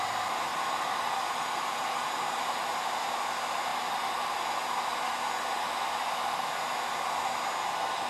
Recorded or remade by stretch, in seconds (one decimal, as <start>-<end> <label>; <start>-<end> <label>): 0.0-0.5 recorded; 0.5-2.4 remade; 2.4-8.1 recorded

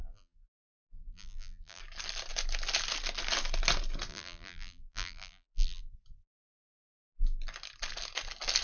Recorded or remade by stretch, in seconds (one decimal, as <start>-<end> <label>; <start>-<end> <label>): 0.0-1.8 remade; 1.8-4.1 recorded; 4.1-5.8 remade; 5.8-8.6 recorded

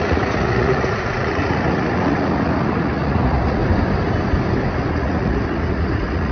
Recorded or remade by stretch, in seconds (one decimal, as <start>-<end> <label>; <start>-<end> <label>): 0.0-3.6 remade; 3.6-4.9 recorded; 4.9-6.3 remade

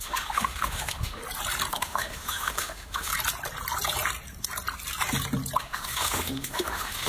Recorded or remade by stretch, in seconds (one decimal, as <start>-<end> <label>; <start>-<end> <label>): 0.0-1.2 remade; 1.2-1.7 recorded; 1.7-3.1 remade; 3.1-5.6 recorded; 5.6-7.1 remade

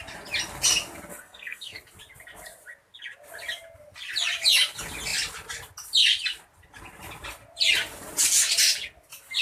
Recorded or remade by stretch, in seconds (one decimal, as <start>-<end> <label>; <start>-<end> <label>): 0.0-1.1 recorded; 1.1-1.8 remade; 1.8-9.4 recorded

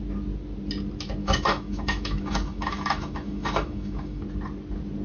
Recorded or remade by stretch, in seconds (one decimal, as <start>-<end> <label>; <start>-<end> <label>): 0.0-1.2 recorded; 1.2-4.2 remade; 4.2-5.0 recorded

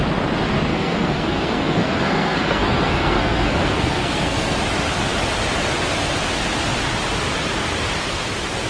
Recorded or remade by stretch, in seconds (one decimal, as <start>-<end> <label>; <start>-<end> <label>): 0.0-0.7 recorded; 0.7-4.6 remade; 4.6-8.7 recorded

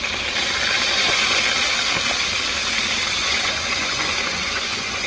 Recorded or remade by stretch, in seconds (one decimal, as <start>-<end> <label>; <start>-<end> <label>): 0.0-0.9 recorded; 0.9-1.4 remade; 1.4-3.2 recorded; 3.2-5.1 remade